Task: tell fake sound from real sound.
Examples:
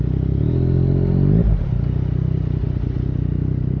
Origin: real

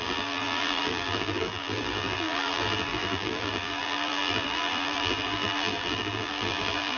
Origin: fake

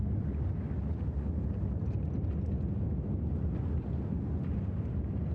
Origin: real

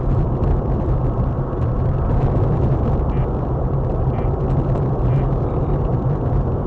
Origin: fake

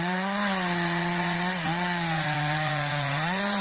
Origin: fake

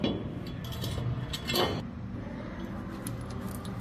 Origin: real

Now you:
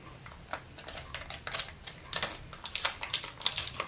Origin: real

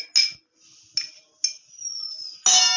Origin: real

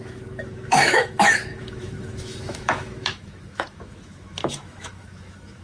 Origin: fake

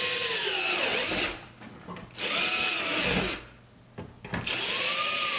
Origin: real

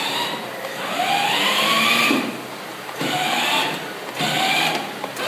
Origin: real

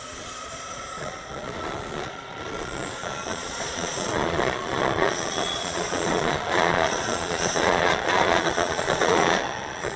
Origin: fake